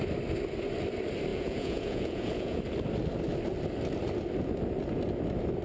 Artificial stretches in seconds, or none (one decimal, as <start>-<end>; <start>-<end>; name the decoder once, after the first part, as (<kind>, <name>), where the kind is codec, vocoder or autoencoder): 1.3-2.6 (vocoder, Vocos)